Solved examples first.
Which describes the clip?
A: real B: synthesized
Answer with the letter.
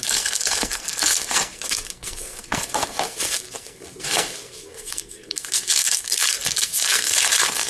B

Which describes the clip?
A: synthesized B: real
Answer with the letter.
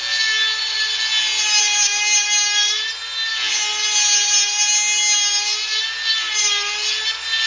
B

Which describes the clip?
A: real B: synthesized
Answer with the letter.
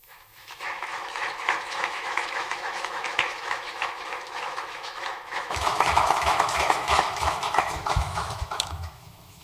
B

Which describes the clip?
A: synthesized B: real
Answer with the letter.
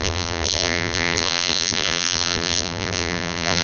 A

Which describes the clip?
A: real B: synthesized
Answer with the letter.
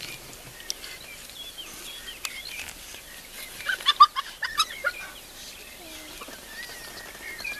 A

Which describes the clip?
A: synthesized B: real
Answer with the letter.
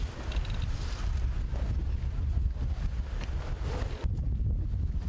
B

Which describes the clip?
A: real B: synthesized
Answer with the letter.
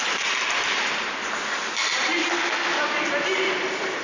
A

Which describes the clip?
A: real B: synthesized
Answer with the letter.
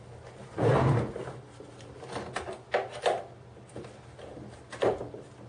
A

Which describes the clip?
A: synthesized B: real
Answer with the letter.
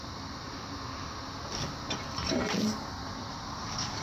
B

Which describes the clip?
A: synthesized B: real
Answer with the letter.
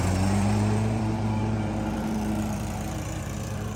A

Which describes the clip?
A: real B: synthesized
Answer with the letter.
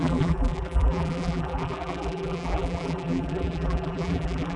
B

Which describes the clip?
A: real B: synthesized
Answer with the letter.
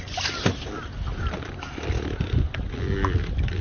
A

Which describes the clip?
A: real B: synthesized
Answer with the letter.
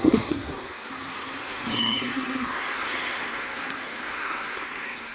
B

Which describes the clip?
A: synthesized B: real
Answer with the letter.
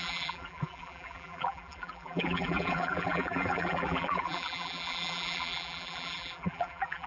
A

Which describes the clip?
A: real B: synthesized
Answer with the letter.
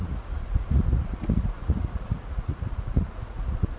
B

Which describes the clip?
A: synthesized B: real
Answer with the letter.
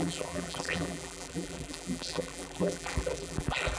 A